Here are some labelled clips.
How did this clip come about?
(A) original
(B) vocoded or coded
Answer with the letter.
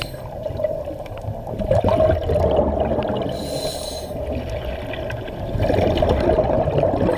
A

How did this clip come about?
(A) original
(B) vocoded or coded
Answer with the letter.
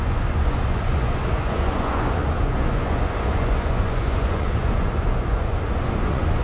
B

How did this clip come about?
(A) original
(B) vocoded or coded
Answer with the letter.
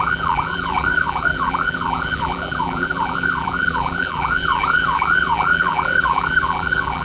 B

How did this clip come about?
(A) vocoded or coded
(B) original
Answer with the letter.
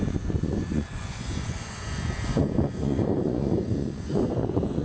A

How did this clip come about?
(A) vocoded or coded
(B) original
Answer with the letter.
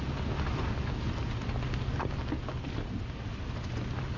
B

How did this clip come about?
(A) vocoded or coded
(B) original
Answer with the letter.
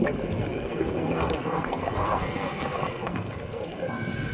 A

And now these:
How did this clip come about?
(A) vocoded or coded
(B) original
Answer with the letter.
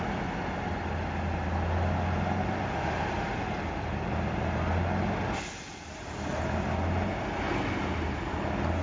B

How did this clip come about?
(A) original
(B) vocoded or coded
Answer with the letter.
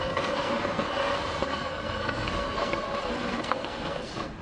B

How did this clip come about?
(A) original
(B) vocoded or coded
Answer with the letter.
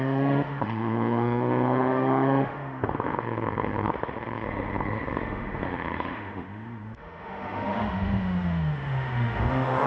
B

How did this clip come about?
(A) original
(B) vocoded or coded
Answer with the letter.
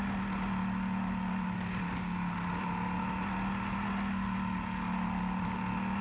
A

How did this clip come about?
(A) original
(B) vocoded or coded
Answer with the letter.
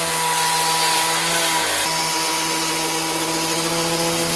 A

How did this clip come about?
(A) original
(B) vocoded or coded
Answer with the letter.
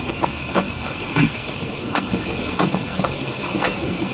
B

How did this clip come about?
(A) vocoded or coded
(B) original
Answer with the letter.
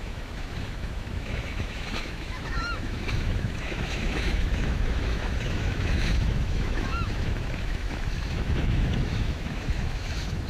A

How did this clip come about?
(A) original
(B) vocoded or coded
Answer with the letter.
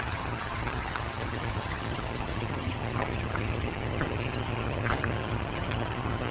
B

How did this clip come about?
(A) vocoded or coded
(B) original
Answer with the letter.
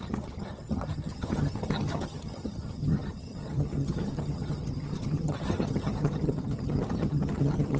A